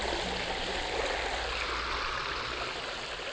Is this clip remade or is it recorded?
recorded